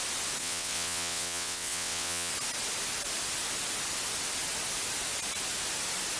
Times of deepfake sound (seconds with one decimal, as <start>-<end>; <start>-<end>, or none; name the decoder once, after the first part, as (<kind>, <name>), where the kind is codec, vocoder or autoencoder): 0.4-2.3 (vocoder, WaveNeXt)